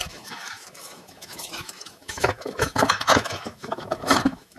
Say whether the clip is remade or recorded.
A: remade